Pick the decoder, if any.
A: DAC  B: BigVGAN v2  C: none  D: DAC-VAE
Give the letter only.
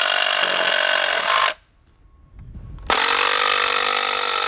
C